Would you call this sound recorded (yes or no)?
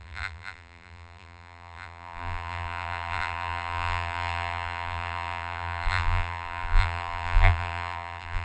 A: no